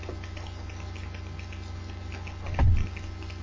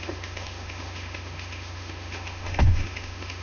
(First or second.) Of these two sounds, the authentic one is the first